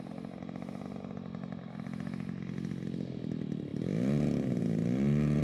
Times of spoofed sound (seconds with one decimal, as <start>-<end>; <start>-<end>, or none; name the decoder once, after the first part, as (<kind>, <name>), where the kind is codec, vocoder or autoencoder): none